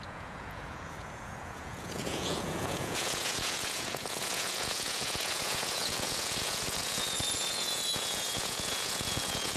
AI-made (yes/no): yes